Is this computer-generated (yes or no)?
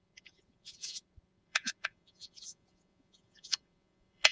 yes